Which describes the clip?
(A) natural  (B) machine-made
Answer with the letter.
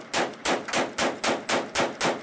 A